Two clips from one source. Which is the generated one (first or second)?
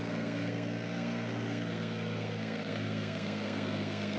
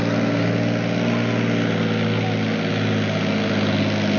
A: first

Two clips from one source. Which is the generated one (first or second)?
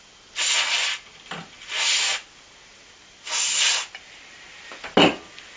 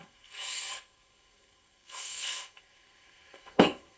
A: second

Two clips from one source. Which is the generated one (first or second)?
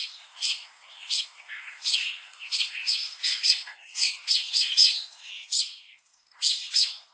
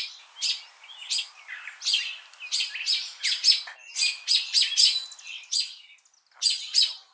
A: first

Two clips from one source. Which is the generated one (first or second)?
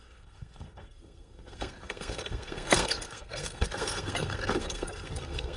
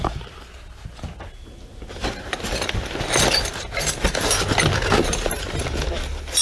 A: first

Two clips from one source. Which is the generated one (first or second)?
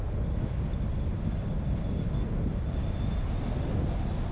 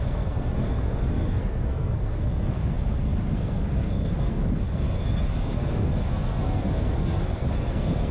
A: second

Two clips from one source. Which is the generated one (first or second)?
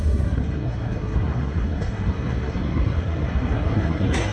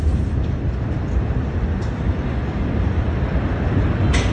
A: first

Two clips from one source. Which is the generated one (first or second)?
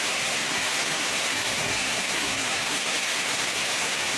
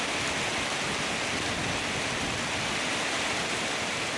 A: first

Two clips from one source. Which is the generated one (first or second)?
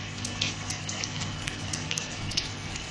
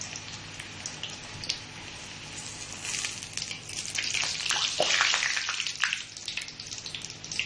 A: first